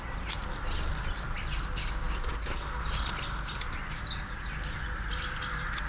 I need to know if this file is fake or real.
real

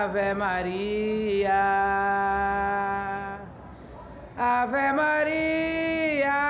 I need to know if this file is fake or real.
real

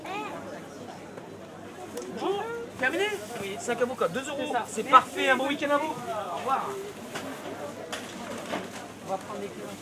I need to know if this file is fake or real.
real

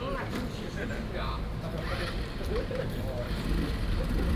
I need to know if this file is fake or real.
fake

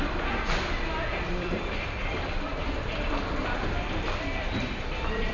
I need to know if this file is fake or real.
fake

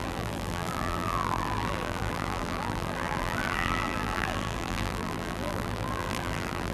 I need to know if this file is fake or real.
fake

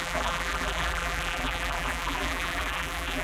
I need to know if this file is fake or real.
fake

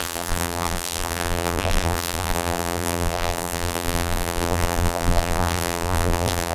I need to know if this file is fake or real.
fake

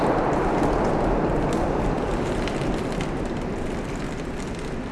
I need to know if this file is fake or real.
fake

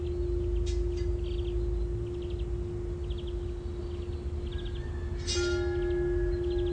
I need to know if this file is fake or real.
real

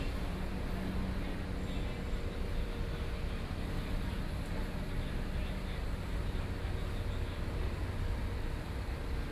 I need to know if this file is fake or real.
real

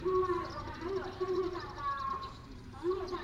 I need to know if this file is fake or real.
fake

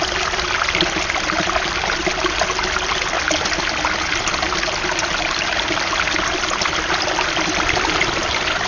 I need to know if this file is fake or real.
real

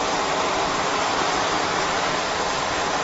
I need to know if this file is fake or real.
real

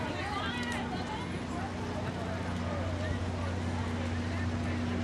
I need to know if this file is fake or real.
real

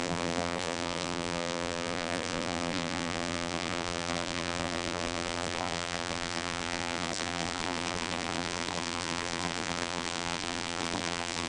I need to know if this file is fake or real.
fake